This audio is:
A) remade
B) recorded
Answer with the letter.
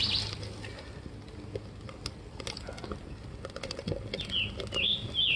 B